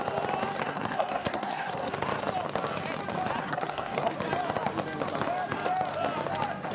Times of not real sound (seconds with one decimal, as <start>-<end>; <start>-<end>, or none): 0.6-1.9; 3.4-4.1